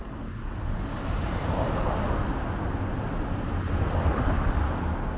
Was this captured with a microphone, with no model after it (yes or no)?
yes